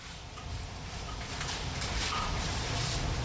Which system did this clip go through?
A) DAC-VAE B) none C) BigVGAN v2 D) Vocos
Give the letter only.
C